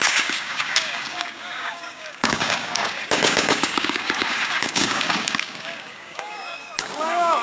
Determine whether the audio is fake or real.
fake